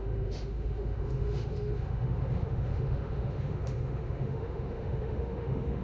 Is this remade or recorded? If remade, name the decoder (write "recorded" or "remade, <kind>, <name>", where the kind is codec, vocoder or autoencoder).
remade, autoencoder, DAC-VAE